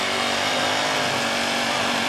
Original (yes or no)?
no